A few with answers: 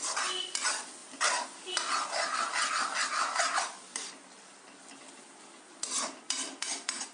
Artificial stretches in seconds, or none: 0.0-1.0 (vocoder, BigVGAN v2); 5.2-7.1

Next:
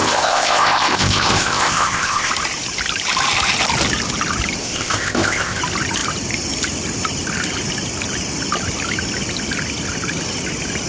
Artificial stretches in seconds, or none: 0.0-2.3 (codec, ZipCodec); 4.6-5.6